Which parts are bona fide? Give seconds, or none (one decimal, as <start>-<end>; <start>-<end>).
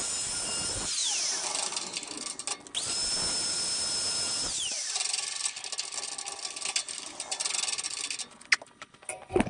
0.0-9.5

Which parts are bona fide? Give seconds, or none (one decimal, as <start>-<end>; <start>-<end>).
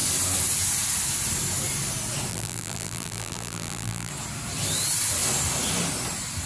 0.0-2.3; 4.1-6.5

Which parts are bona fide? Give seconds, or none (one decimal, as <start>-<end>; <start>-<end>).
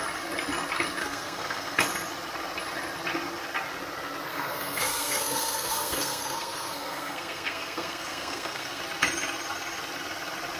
0.0-1.0; 1.8-4.3; 8.8-10.6